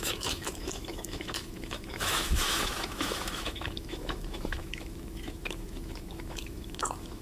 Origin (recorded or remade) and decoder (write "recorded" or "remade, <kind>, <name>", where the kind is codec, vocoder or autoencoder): remade, autoencoder, DAC-VAE